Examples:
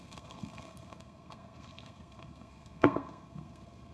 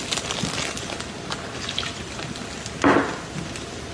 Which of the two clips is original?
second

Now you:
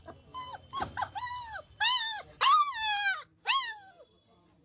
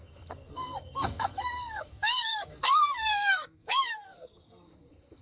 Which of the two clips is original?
first